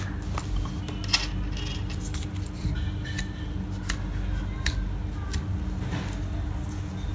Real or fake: real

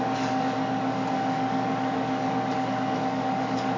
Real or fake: fake